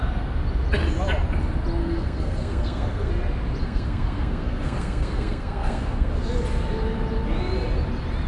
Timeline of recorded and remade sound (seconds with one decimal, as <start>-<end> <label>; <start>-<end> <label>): 0.0-1.8 recorded; 1.8-3.1 remade; 3.1-3.6 recorded; 3.6-6.1 remade; 6.1-8.3 recorded